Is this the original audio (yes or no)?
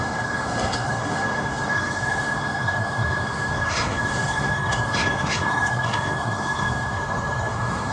no